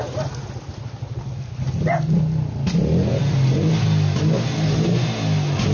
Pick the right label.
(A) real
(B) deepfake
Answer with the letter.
A